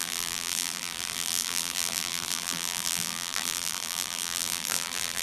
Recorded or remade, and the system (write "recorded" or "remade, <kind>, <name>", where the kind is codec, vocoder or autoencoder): remade, vocoder, BigVGAN v2